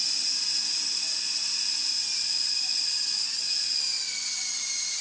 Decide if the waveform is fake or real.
real